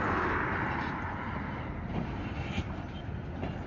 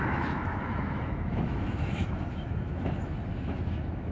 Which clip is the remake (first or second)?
second